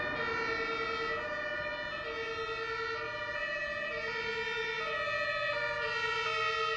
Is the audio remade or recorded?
recorded